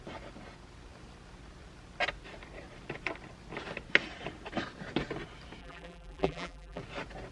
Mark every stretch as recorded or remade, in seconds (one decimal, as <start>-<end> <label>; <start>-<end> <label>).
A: 0.0-5.6 recorded; 5.6-6.8 remade; 6.8-7.3 recorded